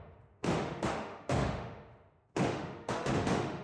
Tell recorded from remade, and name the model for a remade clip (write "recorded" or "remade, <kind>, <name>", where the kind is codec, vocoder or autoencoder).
remade, autoencoder, DAC-VAE